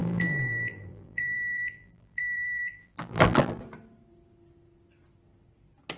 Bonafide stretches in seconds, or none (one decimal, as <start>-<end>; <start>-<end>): 3.6-6.0